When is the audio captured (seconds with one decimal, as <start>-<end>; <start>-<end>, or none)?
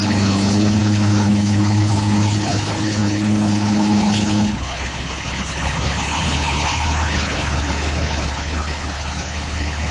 none